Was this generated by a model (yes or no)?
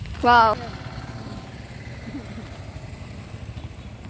no